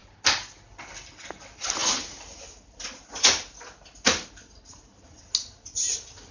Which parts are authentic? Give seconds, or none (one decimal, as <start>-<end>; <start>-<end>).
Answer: 0.0-6.3